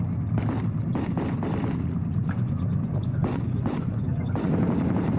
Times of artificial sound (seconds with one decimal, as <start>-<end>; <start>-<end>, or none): 2.2-4.5